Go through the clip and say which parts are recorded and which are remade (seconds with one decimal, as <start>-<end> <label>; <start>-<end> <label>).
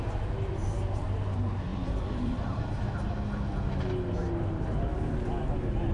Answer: 0.0-1.7 recorded; 1.7-3.1 remade; 3.1-5.9 recorded